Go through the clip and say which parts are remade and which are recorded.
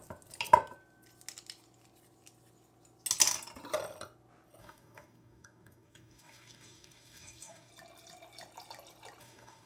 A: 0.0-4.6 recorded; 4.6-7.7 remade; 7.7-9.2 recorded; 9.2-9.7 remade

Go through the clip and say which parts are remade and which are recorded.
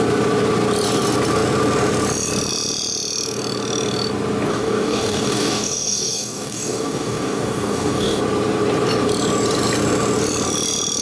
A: 0.0-4.5 recorded; 4.5-8.2 remade; 8.2-11.0 recorded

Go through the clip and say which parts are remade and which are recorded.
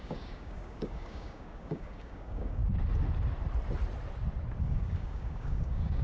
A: 0.0-2.6 remade; 2.6-4.6 recorded; 4.6-6.0 remade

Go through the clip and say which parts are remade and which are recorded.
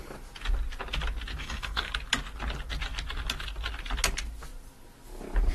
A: 0.0-1.4 recorded; 1.4-1.9 remade; 1.9-5.5 recorded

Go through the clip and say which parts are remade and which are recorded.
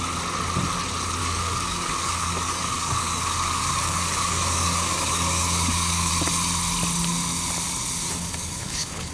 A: 0.0-1.2 recorded; 1.2-6.1 remade; 6.1-8.0 recorded; 8.0-9.1 remade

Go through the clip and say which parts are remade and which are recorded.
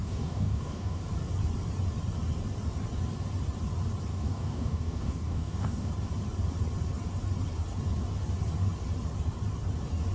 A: 0.0-1.0 remade; 1.0-4.1 recorded; 4.1-5.9 remade; 5.9-10.1 recorded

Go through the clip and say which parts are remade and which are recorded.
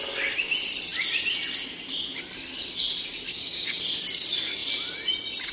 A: 0.0-3.3 recorded; 3.3-3.8 remade; 3.8-5.5 recorded